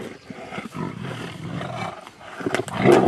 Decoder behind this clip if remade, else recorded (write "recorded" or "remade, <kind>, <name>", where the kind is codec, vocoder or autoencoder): recorded